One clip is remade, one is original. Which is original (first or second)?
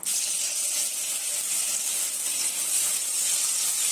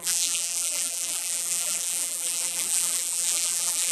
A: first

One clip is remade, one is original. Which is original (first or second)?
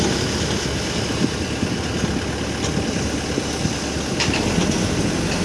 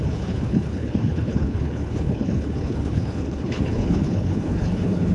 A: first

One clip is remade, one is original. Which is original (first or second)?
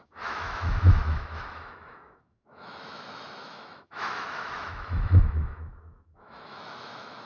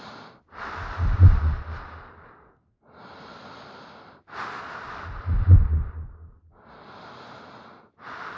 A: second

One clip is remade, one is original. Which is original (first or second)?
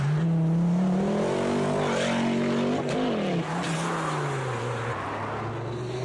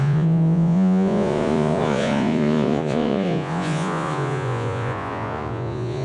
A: first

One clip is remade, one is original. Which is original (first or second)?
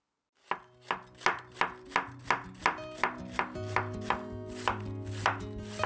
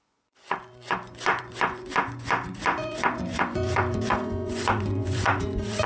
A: first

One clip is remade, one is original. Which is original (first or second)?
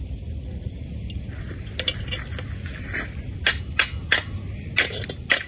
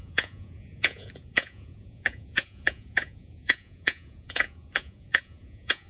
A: first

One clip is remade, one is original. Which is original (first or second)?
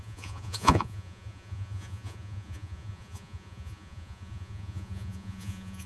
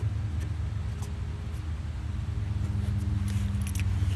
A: second